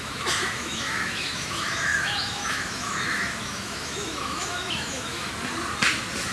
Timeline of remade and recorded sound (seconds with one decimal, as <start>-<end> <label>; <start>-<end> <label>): 0.0-5.3 remade; 5.3-6.3 recorded